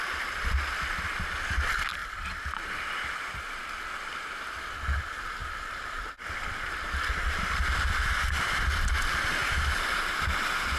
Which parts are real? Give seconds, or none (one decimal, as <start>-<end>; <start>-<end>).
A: 0.0-5.4; 6.1-9.4; 10.1-10.8